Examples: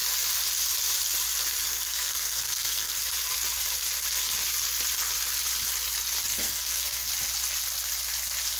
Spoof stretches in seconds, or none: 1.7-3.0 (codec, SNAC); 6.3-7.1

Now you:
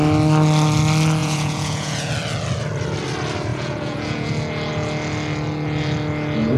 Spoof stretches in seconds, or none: 1.2-2.1 (vocoder, Vocos); 3.5-4.3